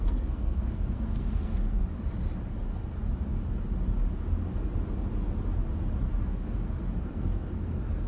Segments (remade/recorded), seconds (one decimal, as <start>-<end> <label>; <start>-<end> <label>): 0.0-1.8 remade; 1.8-6.2 recorded; 6.2-8.1 remade